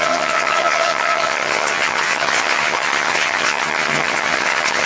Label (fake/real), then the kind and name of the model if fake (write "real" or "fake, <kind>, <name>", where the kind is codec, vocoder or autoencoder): fake, vocoder, HiFi-GAN